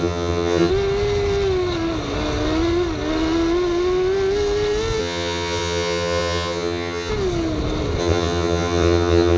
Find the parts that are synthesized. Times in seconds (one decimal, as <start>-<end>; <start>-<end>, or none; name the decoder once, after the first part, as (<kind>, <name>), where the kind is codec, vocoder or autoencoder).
0.0-0.7 (vocoder, HiFi-GAN); 5.0-7.1; 8.0-9.4